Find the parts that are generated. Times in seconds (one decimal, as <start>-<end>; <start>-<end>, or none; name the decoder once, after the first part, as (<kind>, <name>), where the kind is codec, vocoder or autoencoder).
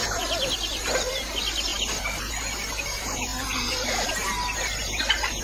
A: none